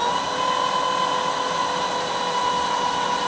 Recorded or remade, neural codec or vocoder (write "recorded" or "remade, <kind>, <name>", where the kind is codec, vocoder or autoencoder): recorded